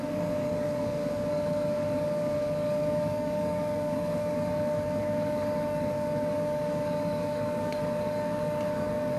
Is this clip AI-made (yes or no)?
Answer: yes